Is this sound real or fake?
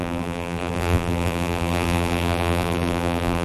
fake